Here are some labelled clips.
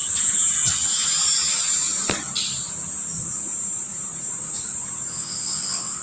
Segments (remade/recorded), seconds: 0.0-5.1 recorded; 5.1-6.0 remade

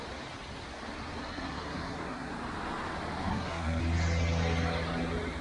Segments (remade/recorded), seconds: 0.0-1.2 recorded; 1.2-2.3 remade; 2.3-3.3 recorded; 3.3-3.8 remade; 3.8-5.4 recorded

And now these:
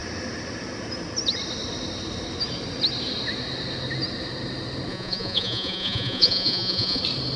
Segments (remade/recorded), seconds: 0.0-4.9 recorded; 4.9-7.0 remade; 7.0-7.4 recorded

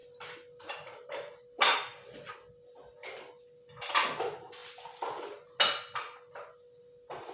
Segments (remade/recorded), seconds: 0.0-7.3 recorded